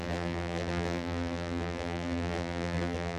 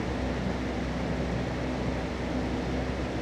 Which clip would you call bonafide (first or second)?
second